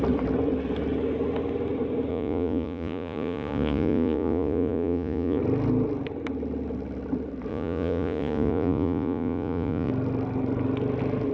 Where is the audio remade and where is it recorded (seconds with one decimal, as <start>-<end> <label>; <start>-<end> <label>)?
0.0-2.1 recorded; 2.1-5.4 remade; 5.4-7.5 recorded; 7.5-9.9 remade; 9.9-11.3 recorded